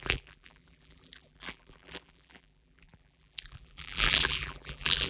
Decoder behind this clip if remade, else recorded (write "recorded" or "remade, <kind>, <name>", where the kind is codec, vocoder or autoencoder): remade, vocoder, BigVGAN v2